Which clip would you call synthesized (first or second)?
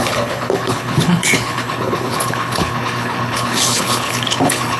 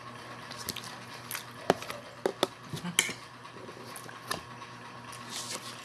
first